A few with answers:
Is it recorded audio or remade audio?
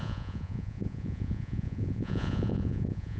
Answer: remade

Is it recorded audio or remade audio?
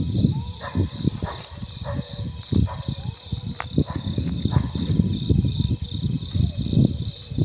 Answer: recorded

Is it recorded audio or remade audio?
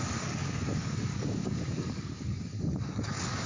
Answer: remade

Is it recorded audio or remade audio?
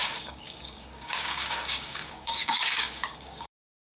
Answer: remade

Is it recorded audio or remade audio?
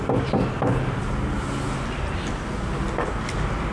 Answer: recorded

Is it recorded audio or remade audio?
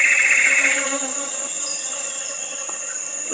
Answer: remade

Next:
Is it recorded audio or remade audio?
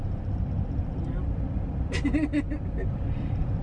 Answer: recorded